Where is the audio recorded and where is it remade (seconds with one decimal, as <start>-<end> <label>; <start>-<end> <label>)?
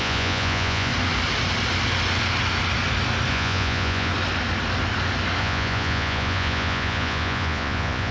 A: 0.0-0.9 remade; 0.9-3.3 recorded; 3.3-4.1 remade; 4.1-5.4 recorded; 5.4-8.1 remade